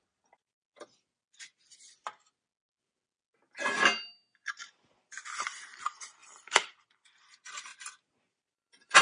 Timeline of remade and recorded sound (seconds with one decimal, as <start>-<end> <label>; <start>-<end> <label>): 0.0-0.6 remade; 0.6-4.6 recorded; 4.6-7.7 remade; 7.7-8.2 recorded; 8.2-9.0 remade